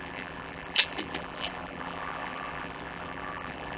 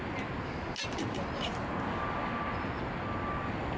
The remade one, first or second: first